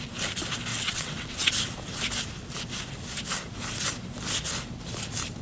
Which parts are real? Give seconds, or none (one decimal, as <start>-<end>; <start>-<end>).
0.0-0.7; 1.5-5.4